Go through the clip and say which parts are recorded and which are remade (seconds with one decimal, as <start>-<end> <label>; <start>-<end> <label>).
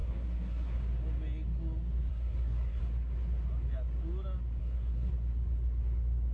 0.0-0.8 remade; 0.8-2.1 recorded; 2.1-2.8 remade; 2.8-4.6 recorded; 4.6-5.1 remade; 5.1-6.3 recorded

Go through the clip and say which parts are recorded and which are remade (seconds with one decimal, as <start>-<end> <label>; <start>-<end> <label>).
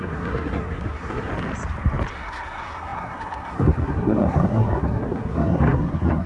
0.0-1.3 remade; 1.3-2.1 recorded; 2.1-6.3 remade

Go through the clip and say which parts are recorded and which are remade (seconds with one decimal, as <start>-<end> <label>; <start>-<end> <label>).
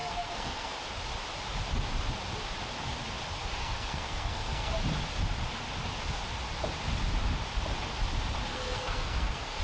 0.0-0.7 remade; 0.7-3.6 recorded; 3.6-4.7 remade; 4.7-8.5 recorded; 8.5-9.6 remade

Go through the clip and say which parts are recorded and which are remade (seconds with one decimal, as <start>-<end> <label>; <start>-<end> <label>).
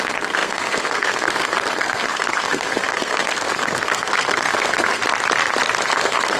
0.0-5.0 remade; 5.0-5.8 recorded; 5.8-6.4 remade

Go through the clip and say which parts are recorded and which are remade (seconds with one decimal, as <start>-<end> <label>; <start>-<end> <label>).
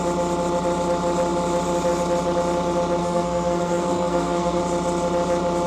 0.0-3.0 recorded; 3.0-4.6 remade; 4.6-5.7 recorded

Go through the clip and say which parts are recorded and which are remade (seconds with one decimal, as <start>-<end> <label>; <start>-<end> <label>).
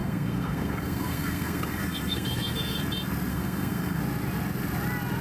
0.0-2.8 remade; 2.8-3.3 recorded; 3.3-4.0 remade; 4.0-5.2 recorded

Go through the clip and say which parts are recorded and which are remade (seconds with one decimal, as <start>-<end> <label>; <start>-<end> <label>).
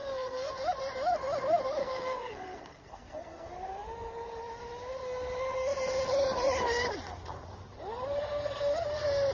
0.0-0.5 remade; 0.5-1.8 recorded; 1.8-3.5 remade; 3.5-9.3 recorded